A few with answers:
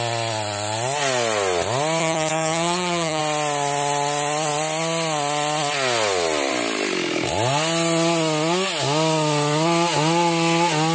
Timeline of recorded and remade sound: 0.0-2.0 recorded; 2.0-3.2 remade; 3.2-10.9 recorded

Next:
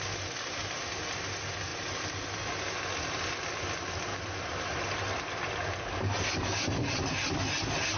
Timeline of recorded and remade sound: 0.0-8.0 recorded